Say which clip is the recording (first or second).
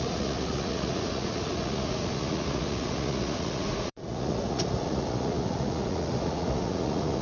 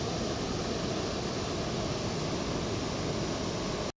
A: second